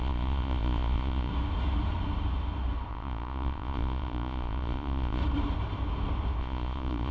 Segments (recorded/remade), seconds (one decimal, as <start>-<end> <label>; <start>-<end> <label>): 0.0-1.3 remade; 1.3-2.9 recorded; 2.9-5.2 remade; 5.2-6.4 recorded; 6.4-7.1 remade